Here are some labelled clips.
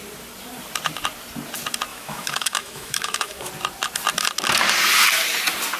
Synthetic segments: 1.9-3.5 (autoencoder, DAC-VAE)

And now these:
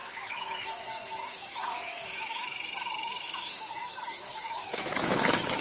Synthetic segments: 0.0-5.6 (autoencoder, DAC-VAE)

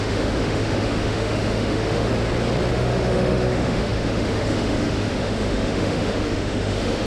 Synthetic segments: 0.0-2.1 (autoencoder, DAC-VAE); 2.7-7.1

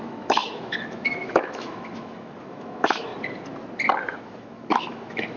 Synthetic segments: 0.0-3.1 (autoencoder, DAC-VAE); 4.2-5.4